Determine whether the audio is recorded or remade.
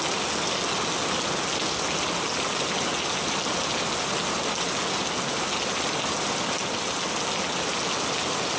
recorded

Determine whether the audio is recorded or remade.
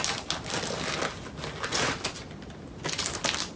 recorded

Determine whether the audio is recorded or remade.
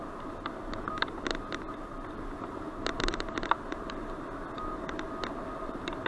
recorded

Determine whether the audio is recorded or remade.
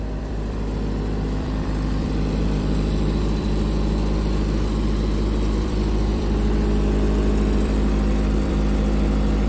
remade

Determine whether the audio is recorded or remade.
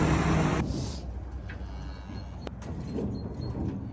recorded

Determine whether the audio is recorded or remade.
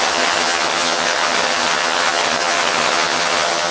remade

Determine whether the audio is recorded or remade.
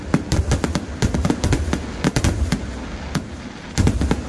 recorded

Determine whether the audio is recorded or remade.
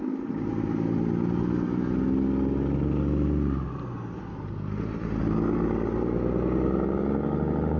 recorded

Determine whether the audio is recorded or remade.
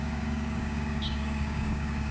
remade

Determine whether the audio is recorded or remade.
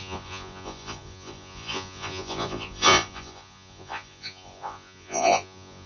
remade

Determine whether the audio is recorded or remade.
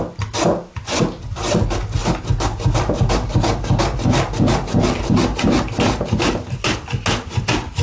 recorded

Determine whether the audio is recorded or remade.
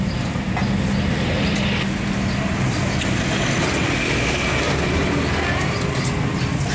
recorded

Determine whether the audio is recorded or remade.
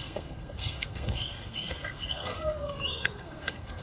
remade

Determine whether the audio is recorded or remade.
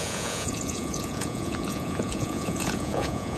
remade